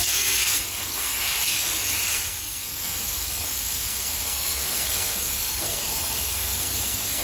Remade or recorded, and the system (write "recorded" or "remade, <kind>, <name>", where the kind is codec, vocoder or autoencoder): remade, codec, SNAC